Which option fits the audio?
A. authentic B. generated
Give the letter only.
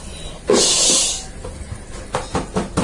A